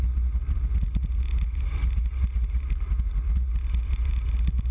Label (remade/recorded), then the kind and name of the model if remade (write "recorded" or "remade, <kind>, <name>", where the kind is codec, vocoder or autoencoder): recorded